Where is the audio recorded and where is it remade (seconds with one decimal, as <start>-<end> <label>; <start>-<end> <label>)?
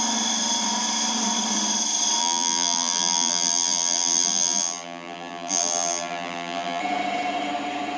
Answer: 0.0-2.2 recorded; 2.2-6.8 remade; 6.8-8.0 recorded